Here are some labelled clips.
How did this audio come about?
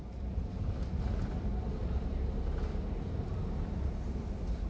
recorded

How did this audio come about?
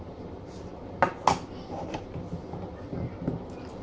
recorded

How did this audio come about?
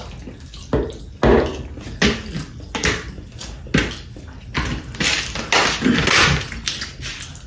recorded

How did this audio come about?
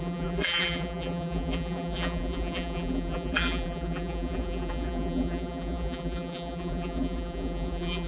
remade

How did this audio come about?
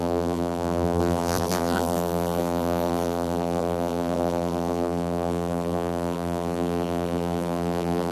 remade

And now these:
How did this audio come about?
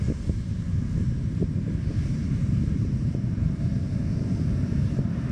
remade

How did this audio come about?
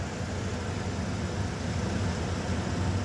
recorded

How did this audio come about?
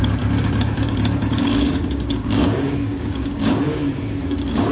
remade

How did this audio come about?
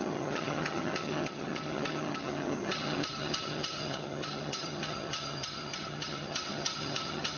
remade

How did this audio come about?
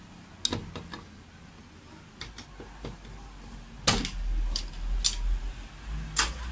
recorded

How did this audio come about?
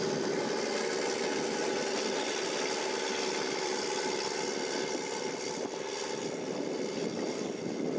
recorded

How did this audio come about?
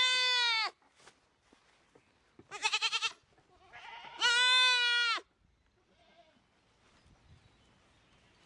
recorded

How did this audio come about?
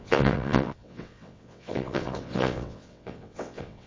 remade